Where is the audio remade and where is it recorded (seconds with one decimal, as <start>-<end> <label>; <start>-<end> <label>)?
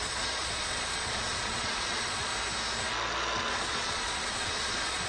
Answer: 0.0-2.3 remade; 2.3-3.5 recorded; 3.5-5.1 remade